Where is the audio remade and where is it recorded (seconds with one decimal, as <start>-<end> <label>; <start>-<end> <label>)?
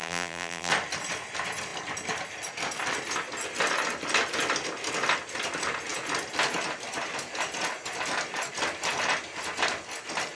0.0-0.7 remade; 0.7-10.3 recorded